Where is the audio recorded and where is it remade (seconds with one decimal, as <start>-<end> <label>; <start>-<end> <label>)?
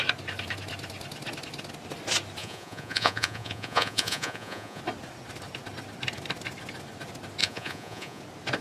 0.0-2.4 recorded; 2.4-4.8 remade; 4.8-7.4 recorded; 7.4-8.2 remade; 8.2-8.6 recorded